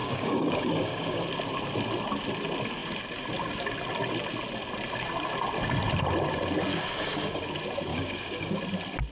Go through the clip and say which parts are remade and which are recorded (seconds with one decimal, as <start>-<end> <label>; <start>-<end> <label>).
0.0-1.2 remade; 1.2-6.7 recorded; 6.7-7.4 remade; 7.4-7.9 recorded; 7.9-8.6 remade; 8.6-9.1 recorded